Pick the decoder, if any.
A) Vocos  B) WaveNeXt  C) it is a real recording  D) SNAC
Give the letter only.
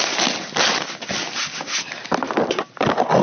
C